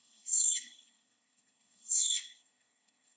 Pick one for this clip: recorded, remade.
remade